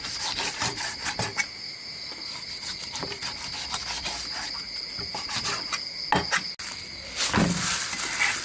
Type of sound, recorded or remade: recorded